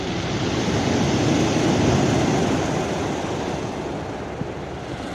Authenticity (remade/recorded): recorded